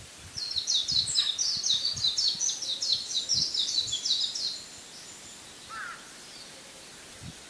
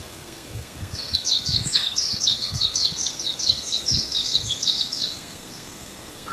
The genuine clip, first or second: first